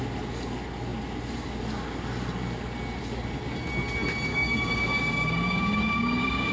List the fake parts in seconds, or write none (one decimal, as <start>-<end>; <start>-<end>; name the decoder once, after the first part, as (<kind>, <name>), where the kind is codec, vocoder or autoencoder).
4.3-6.5 (codec, DAC)